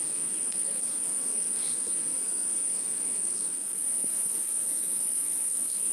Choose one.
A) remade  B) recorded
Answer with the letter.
A